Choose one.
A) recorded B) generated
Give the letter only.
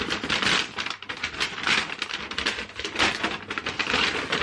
A